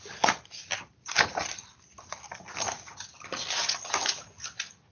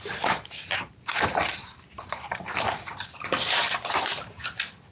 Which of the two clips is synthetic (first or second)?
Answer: second